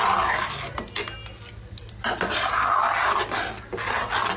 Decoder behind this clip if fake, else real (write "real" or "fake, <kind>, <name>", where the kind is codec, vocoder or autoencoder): real